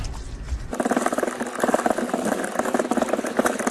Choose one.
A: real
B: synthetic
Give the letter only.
A